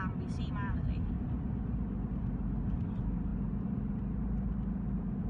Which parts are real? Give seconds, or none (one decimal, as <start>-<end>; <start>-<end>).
0.0-5.3